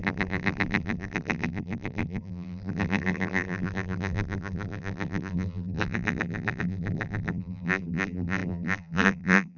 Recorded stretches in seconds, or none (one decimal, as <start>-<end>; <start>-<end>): none